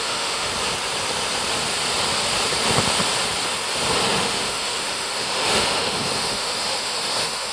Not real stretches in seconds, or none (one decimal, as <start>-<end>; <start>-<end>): 0.0-0.5; 4.2-7.5